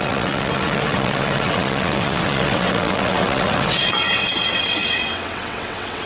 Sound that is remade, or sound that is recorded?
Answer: remade